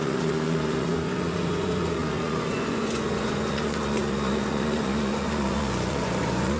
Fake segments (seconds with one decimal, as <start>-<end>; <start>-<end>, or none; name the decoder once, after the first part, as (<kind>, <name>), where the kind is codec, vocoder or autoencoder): 0.0-6.6 (vocoder, Vocos)